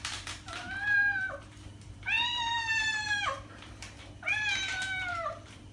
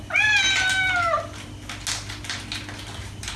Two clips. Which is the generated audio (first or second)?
first